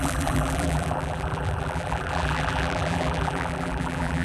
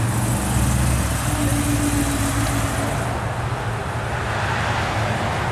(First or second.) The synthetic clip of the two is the first